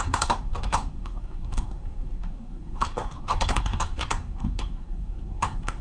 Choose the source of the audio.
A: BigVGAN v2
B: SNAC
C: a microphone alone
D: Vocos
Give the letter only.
B